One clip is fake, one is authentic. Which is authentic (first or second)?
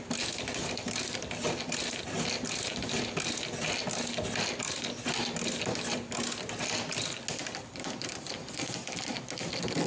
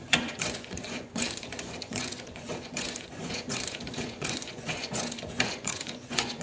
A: first